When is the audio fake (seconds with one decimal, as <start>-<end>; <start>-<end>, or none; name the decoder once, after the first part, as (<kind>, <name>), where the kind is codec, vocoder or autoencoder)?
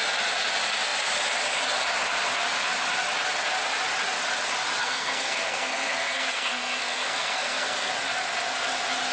4.8-7.9 (codec, SNAC)